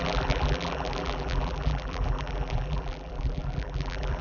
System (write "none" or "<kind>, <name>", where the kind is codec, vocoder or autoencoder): vocoder, BigVGAN v2